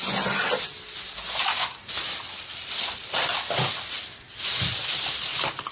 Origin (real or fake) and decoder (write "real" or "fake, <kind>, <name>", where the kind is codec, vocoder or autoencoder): real